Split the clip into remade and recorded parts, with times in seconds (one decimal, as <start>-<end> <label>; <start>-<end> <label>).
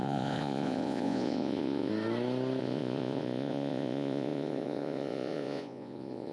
0.0-1.9 remade; 1.9-2.6 recorded; 2.6-6.3 remade